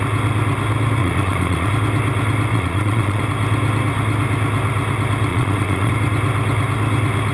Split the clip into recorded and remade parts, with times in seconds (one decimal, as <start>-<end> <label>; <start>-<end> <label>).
0.0-1.0 recorded; 1.0-1.7 remade; 1.7-2.5 recorded; 2.5-3.2 remade; 3.2-5.3 recorded; 5.3-5.9 remade; 5.9-7.3 recorded